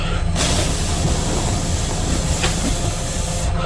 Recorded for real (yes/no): yes